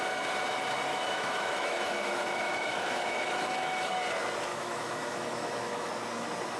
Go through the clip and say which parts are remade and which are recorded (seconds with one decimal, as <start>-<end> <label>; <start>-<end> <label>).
0.0-0.9 recorded; 0.9-3.9 remade; 3.9-4.5 recorded; 4.5-5.9 remade; 5.9-6.6 recorded